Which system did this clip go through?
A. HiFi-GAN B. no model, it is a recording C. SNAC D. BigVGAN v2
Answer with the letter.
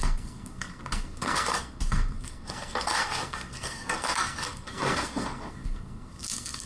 C